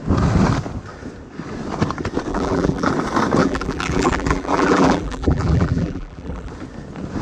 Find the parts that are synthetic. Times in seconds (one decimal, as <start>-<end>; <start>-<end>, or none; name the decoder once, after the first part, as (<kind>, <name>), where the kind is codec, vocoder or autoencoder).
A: 2.3-2.9 (vocoder, BigVGAN v2); 3.4-6.5